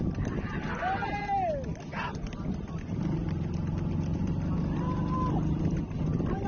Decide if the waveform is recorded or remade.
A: recorded